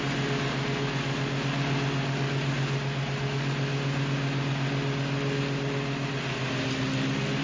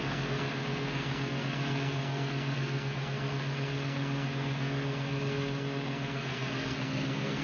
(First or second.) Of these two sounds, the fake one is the second